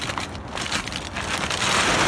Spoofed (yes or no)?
no